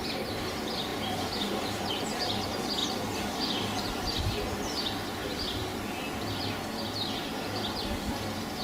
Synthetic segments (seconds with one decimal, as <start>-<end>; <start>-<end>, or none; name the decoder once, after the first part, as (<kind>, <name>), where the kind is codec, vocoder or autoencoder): none